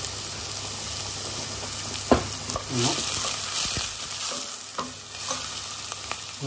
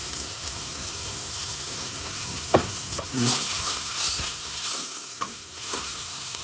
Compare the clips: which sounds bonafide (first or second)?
first